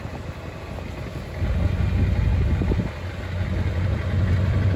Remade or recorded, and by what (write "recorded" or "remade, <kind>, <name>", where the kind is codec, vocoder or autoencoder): recorded